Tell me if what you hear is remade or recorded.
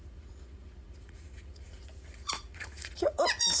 remade